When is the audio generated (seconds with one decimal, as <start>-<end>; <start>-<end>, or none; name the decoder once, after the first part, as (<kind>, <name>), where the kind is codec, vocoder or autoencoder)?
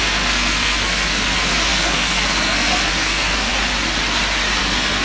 0.0-3.5 (codec, SNAC); 4.6-5.0